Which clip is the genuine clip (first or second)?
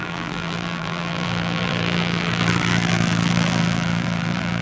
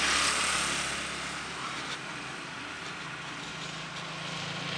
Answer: second